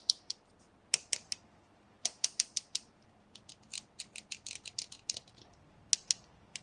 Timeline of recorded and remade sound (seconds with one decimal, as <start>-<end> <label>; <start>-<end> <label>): 0.0-6.6 recorded